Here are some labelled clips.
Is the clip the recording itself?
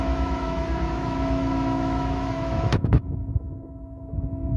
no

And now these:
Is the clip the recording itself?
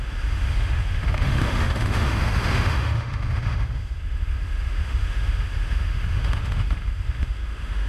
no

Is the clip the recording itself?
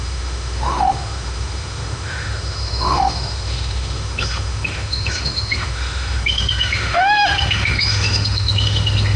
no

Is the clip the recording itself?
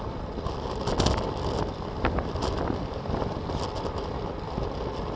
yes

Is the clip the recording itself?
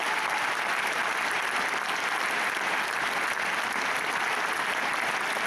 yes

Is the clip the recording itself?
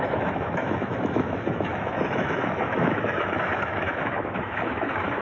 no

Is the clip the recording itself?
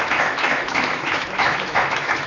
no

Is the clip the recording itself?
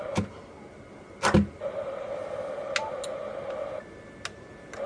yes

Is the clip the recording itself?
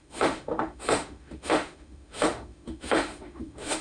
no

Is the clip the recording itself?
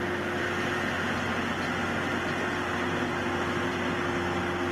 yes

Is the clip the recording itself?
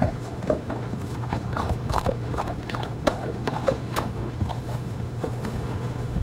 no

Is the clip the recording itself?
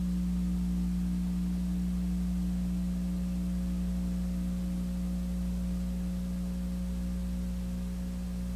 yes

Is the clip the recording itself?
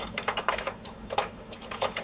no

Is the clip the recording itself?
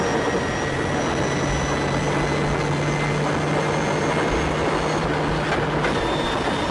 yes